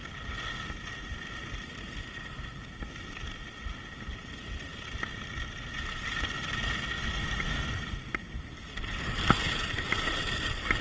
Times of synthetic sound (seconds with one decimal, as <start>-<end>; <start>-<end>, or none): none

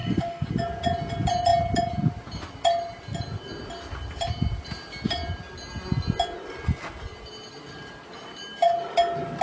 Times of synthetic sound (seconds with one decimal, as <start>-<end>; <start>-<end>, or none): 0.0-0.5

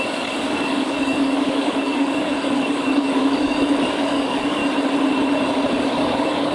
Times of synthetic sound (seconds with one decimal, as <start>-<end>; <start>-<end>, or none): 0.0-4.6; 5.7-6.5

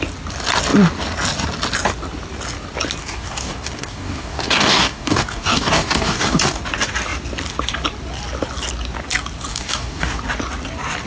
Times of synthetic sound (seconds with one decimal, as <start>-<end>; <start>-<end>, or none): 3.0-6.6; 9.5-10.2

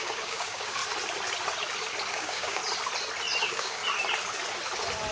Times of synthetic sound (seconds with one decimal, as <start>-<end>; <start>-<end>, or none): 0.0-0.8; 2.1-2.6; 3.4-3.8

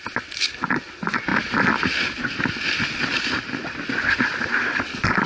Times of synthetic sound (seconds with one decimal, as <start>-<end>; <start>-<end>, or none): none